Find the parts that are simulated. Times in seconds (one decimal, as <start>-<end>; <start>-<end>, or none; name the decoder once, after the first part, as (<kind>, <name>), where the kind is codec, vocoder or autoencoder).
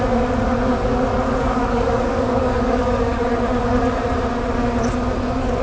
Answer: 1.4-3.2 (codec, DAC)